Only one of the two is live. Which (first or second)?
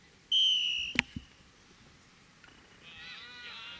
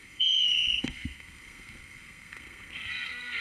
first